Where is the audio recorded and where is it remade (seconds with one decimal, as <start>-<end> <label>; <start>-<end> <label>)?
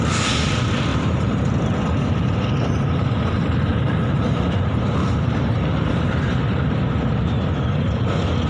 0.0-0.9 recorded; 0.9-3.3 remade; 3.3-3.7 recorded; 3.7-6.8 remade; 6.8-8.5 recorded